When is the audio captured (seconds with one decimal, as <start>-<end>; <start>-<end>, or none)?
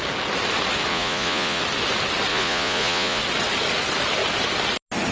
0.0-0.9; 1.6-2.3; 3.2-5.1